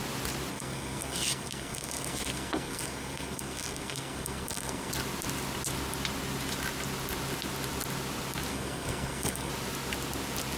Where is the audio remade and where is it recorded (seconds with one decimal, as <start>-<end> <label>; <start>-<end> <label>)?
0.0-0.5 recorded; 0.5-4.9 remade; 4.9-8.5 recorded; 8.5-9.5 remade; 9.5-10.6 recorded